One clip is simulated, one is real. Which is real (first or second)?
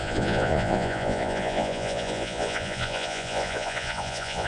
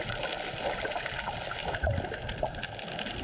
second